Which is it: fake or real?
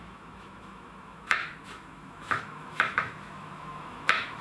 fake